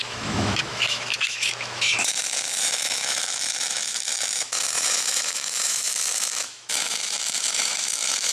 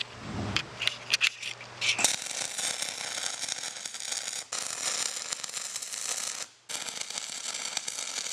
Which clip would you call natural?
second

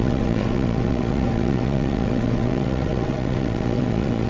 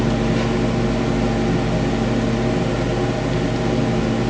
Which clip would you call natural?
second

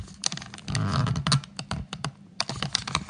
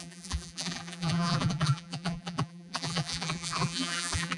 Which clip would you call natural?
first